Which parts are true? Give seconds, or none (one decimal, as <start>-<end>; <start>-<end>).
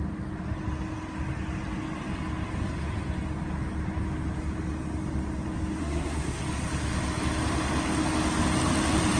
0.0-5.8; 6.4-9.2